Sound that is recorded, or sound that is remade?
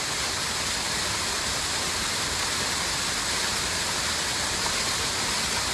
recorded